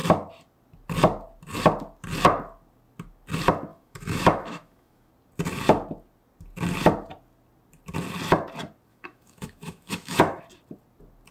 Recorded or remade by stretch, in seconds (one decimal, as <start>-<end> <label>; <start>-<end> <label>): 0.0-3.7 recorded; 3.7-5.1 remade; 5.1-8.9 recorded; 8.9-10.4 remade; 10.4-11.3 recorded